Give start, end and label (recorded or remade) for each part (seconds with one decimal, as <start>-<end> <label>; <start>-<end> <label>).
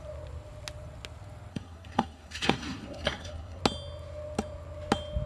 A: 0.0-1.5 recorded; 1.5-3.6 remade; 3.6-5.3 recorded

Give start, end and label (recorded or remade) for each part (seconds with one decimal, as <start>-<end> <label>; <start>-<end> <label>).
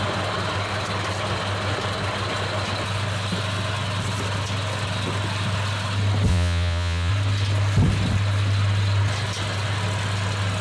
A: 0.0-6.3 recorded; 6.3-7.1 remade; 7.1-10.6 recorded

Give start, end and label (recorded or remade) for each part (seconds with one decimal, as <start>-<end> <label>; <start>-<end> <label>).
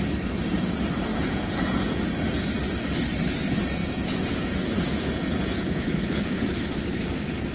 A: 0.0-1.1 recorded; 1.1-2.0 remade; 2.0-3.8 recorded; 3.8-6.5 remade; 6.5-7.5 recorded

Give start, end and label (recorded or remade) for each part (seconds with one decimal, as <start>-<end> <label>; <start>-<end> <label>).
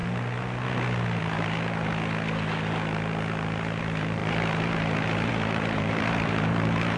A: 0.0-1.2 recorded; 1.2-1.9 remade; 1.9-3.8 recorded; 3.8-7.0 remade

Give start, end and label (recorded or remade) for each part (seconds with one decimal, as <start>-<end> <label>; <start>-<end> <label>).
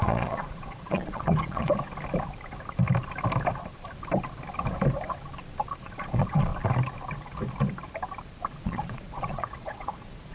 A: 0.0-1.7 remade; 1.7-5.8 recorded; 5.8-6.5 remade; 6.5-8.5 recorded; 8.5-10.3 remade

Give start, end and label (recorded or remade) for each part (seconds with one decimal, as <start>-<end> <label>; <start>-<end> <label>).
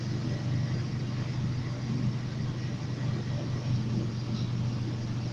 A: 0.0-5.3 recorded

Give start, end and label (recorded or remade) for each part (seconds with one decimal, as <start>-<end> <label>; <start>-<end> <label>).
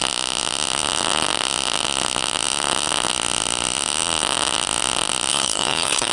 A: 0.0-5.3 recorded; 5.3-6.1 remade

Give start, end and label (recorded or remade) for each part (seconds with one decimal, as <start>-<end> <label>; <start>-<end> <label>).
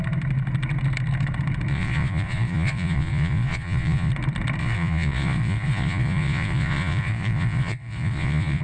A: 0.0-1.7 recorded; 1.7-4.1 remade; 4.1-4.6 recorded; 4.6-8.6 remade